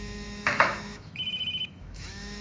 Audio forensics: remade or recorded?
remade